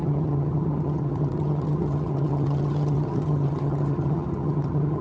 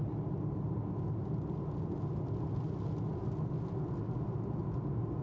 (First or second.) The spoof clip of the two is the first